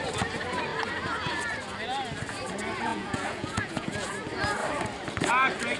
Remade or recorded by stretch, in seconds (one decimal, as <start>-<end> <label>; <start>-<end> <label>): 0.0-2.9 recorded; 2.9-4.1 remade; 4.1-5.8 recorded